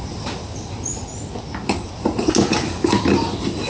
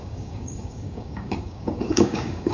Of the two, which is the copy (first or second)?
second